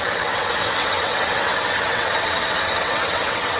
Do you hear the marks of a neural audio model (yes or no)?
yes